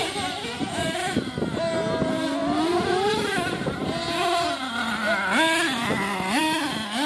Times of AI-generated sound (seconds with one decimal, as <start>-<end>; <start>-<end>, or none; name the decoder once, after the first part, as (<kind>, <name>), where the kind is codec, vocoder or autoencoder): none